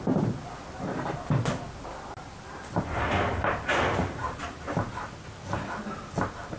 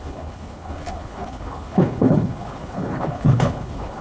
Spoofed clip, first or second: second